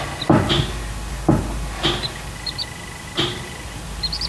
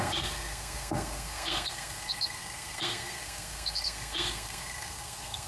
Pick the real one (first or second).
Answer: first